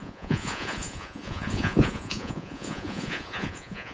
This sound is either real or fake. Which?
fake